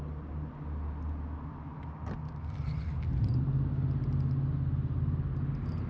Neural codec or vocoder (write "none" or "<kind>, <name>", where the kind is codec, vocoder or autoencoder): none